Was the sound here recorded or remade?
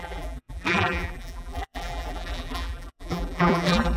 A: remade